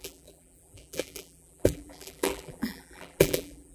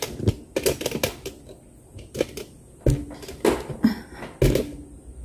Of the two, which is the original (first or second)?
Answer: second